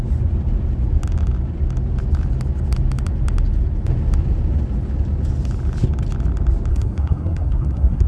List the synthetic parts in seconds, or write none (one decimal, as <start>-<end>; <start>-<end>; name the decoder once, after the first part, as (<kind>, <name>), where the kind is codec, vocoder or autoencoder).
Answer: 6.7-8.1 (codec, SNAC)